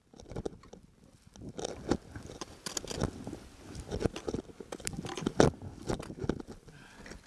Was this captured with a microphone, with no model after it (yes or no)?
yes